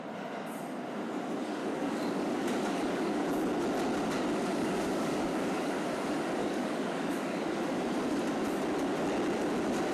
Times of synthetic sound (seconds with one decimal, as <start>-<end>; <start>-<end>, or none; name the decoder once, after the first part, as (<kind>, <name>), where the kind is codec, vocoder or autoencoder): 1.6-3.2 (codec, DAC); 4.4-5.8; 6.4-7.4